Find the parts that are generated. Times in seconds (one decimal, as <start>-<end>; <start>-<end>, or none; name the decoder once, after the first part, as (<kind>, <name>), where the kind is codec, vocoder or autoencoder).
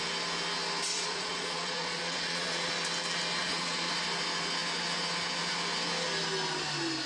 0.9-2.7 (vocoder, Vocos); 3.4-3.9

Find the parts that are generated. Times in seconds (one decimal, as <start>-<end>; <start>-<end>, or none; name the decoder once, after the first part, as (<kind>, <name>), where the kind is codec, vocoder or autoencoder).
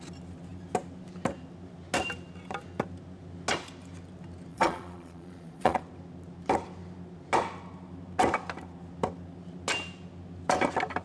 4.5-5.8 (vocoder, Vocos)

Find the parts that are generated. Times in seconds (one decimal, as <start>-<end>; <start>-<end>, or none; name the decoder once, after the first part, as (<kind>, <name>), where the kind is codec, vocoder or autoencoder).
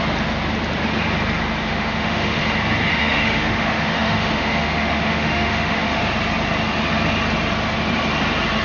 1.6-2.4 (autoencoder, DAC-VAE); 2.9-6.0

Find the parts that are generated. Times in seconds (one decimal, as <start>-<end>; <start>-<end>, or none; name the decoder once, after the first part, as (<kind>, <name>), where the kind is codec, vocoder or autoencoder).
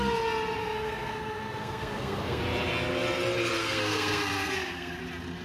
0.6-2.4 (codec, SNAC); 3.6-5.0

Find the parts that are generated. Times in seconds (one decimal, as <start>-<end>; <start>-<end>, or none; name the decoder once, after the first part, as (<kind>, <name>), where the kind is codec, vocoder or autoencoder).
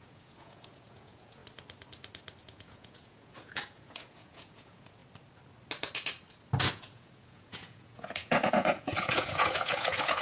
0.0-1.4 (vocoder, Vocos); 2.4-5.0; 6.7-10.2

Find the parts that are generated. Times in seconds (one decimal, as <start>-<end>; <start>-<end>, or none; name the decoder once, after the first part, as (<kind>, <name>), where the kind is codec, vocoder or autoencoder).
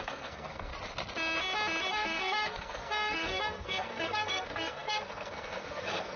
0.0-0.7 (codec, SNAC); 1.9-6.2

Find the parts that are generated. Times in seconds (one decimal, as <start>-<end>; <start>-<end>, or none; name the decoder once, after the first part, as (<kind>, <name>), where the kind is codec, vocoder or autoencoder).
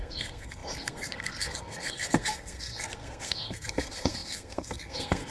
0.0-5.3 (codec, SNAC)